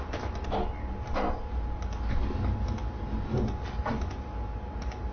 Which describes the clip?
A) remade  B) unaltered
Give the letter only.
B